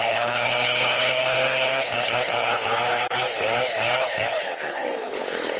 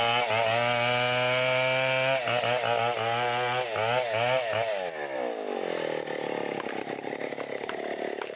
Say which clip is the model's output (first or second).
first